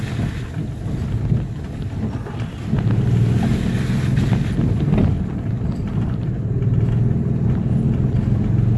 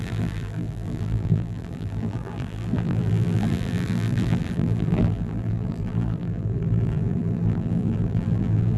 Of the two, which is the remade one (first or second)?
second